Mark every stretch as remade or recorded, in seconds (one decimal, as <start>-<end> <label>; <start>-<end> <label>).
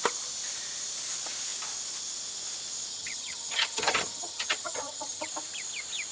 0.0-2.9 recorded; 2.9-5.3 remade; 5.3-6.1 recorded